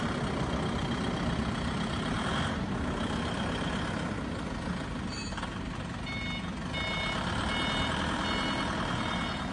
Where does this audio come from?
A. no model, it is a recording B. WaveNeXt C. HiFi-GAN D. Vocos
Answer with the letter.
A